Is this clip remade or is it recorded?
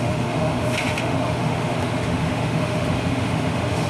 remade